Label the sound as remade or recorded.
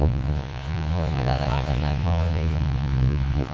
remade